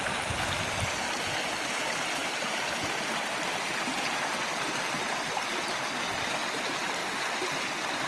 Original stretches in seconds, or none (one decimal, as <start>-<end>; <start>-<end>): 0.0-8.1